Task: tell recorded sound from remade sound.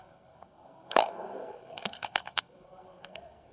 remade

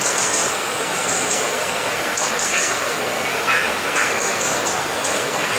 remade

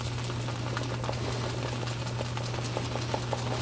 recorded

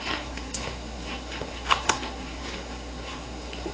remade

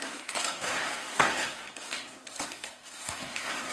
remade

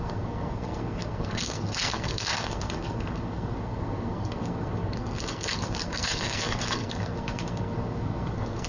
remade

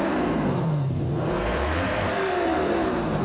remade